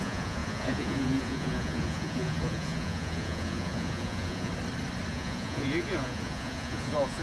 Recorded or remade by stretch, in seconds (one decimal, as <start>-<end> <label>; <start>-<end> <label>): 0.0-4.5 remade; 4.5-5.1 recorded; 5.1-7.2 remade

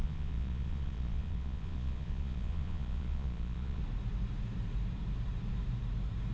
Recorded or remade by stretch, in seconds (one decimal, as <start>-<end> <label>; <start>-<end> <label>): 0.0-3.8 remade; 3.8-6.3 recorded

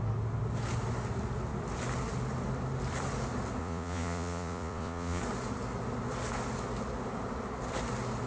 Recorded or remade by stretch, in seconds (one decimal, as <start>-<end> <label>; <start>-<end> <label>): 0.0-3.6 recorded; 3.6-5.2 remade; 5.2-8.3 recorded

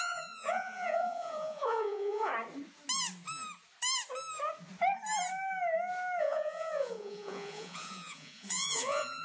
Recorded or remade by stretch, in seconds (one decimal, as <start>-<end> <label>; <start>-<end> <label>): 0.0-2.3 remade; 2.3-6.2 recorded; 6.2-9.2 remade

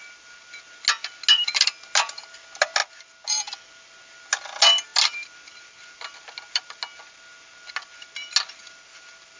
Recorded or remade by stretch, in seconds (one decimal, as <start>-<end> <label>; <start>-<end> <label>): 0.0-9.4 recorded

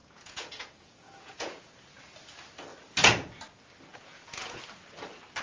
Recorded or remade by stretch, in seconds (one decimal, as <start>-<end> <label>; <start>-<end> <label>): 0.0-1.6 remade; 1.6-3.9 recorded; 3.9-4.6 remade; 4.6-5.4 recorded

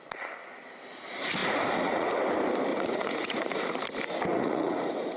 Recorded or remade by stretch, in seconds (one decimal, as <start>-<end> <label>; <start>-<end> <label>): 0.0-1.4 recorded; 1.4-2.1 remade; 2.1-2.7 recorded; 2.7-3.8 remade; 3.8-4.3 recorded; 4.3-5.2 remade

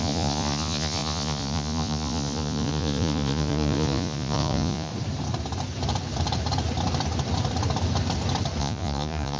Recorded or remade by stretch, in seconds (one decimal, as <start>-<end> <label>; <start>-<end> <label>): 0.0-4.9 remade; 4.9-8.6 recorded; 8.6-9.4 remade